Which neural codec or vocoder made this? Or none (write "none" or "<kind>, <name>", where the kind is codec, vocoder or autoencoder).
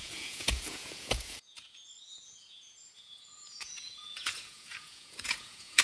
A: vocoder, Vocos